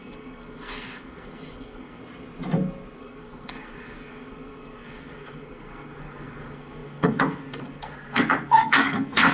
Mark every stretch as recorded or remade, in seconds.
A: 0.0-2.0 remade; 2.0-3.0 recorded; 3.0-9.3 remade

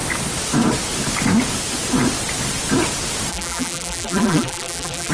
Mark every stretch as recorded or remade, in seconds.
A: 0.0-3.3 recorded; 3.3-5.1 remade

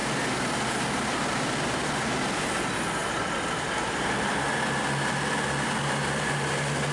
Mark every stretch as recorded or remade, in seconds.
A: 0.0-1.5 remade; 1.5-3.0 recorded; 3.0-3.7 remade; 3.7-6.9 recorded

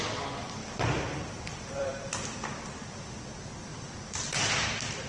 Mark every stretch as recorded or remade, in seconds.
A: 0.0-0.6 recorded; 0.6-2.5 remade; 2.5-3.7 recorded; 3.7-4.4 remade; 4.4-5.1 recorded

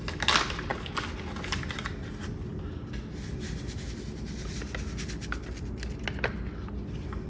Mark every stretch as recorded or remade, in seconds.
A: 0.0-7.3 recorded

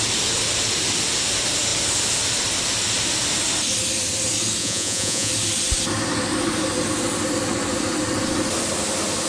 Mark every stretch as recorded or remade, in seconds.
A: 0.0-4.6 recorded; 4.6-5.3 remade; 5.3-9.3 recorded